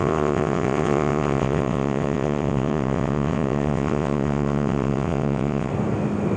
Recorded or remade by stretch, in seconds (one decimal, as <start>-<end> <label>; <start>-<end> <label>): 0.0-5.7 remade; 5.7-6.4 recorded

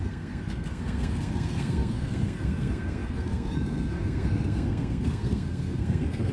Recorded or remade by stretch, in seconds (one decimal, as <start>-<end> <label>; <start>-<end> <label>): 0.0-6.3 remade

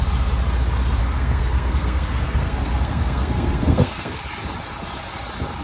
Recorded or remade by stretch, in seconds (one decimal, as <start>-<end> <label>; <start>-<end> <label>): 0.0-1.0 recorded; 1.0-4.2 remade; 4.2-5.6 recorded

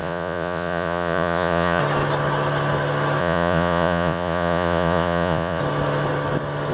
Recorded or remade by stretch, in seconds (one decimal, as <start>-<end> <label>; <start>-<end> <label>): 0.0-1.8 remade; 1.8-3.2 recorded; 3.2-5.6 remade; 5.6-6.7 recorded

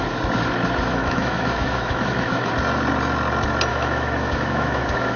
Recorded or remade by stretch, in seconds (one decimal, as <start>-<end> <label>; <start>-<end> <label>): 0.0-0.9 recorded; 0.9-2.5 remade; 2.5-3.7 recorded; 3.7-5.2 remade

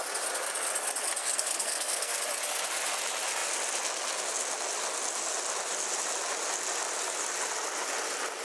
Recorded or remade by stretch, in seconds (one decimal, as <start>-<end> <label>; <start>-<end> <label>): 0.0-1.2 recorded; 1.2-2.2 remade; 2.2-8.4 recorded

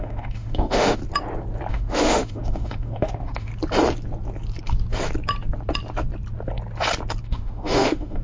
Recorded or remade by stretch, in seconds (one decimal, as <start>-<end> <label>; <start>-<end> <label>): 0.0-1.0 remade; 1.0-1.7 recorded; 1.7-3.5 remade; 3.5-7.2 recorded; 7.2-8.2 remade

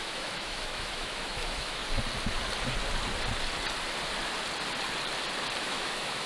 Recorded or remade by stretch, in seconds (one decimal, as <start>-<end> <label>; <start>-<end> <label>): 0.0-1.8 remade; 1.8-5.6 recorded; 5.6-6.3 remade